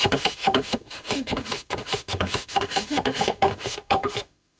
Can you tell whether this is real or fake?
fake